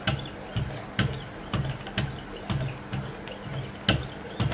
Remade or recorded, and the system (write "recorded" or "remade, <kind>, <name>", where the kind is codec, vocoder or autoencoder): recorded